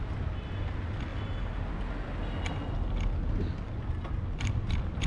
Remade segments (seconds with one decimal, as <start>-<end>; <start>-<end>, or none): none

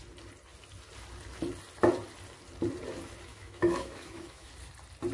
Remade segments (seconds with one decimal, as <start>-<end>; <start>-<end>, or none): 3.3-4.5